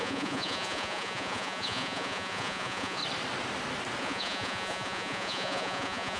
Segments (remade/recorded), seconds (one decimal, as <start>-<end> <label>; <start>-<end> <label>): 0.0-3.0 remade; 3.0-4.0 recorded; 4.0-6.2 remade